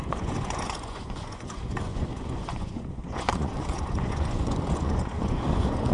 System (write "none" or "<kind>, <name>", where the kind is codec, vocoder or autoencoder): vocoder, Vocos